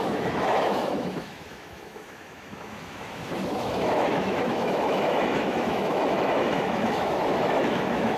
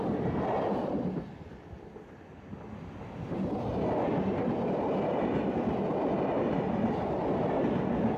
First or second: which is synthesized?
first